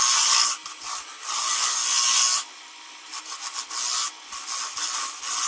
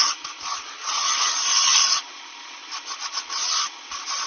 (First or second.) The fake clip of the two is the second